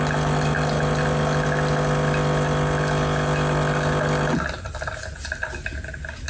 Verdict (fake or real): real